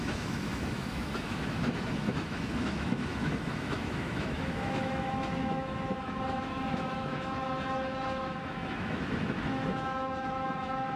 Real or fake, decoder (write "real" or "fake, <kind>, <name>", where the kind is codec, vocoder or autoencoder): fake, autoencoder, DAC-VAE